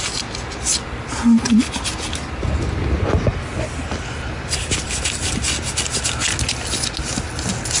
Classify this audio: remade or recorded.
recorded